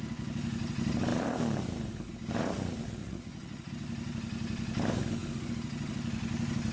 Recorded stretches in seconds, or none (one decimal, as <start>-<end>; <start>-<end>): 0.0-3.0; 3.7-6.7

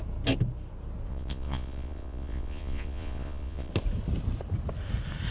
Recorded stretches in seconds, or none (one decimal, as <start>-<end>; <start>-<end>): 0.0-1.1; 3.7-5.3

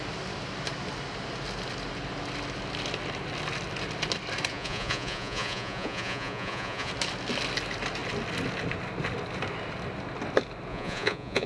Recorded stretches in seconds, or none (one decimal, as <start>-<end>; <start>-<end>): 0.0-4.5; 6.9-10.7

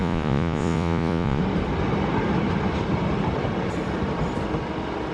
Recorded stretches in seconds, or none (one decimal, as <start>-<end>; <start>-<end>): 1.4-5.1

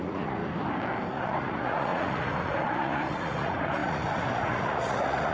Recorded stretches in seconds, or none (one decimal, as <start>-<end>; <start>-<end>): 0.4-1.1